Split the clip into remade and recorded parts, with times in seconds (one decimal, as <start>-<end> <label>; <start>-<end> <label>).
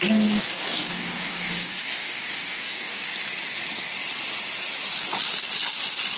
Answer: 0.0-3.1 remade; 3.1-6.2 recorded